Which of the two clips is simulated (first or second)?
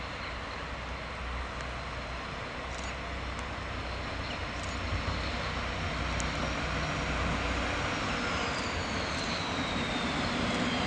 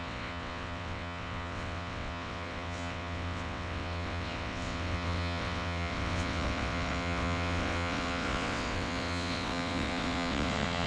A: second